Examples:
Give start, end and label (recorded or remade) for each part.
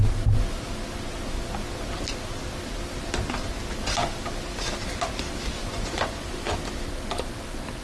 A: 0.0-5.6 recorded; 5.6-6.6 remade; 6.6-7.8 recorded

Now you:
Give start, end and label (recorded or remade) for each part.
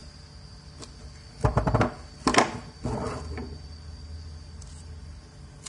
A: 0.0-1.0 recorded; 1.0-5.7 remade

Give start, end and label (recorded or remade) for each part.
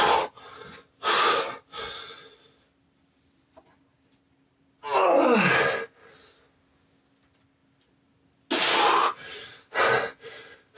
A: 0.0-10.8 recorded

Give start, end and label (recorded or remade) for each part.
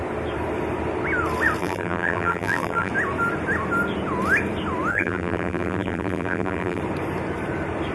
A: 0.0-1.6 recorded; 1.6-2.9 remade; 2.9-4.9 recorded; 4.9-6.8 remade; 6.8-7.9 recorded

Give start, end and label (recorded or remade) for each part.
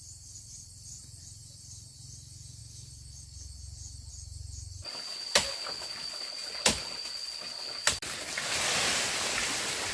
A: 0.0-9.9 recorded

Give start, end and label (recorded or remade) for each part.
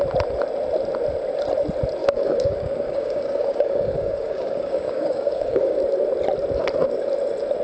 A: 0.0-2.0 recorded; 2.0-5.8 remade; 5.8-7.6 recorded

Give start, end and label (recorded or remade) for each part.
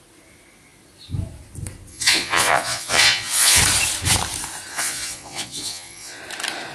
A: 0.0-1.9 recorded; 1.9-3.6 remade; 3.6-4.7 recorded; 4.7-6.2 remade; 6.2-6.7 recorded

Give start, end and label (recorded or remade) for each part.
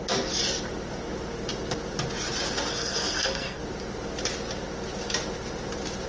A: 0.0-2.7 recorded; 2.7-3.6 remade; 3.6-6.1 recorded